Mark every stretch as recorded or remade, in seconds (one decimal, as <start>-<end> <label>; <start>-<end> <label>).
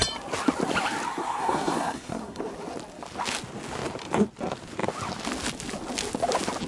0.0-1.2 recorded; 1.2-2.4 remade; 2.4-6.7 recorded